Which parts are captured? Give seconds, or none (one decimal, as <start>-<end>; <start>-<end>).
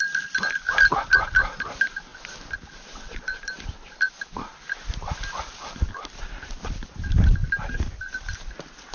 0.0-8.9